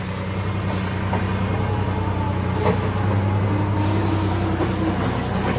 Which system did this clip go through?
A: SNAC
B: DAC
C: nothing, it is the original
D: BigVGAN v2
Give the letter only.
C